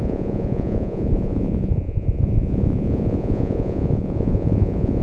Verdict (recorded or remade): remade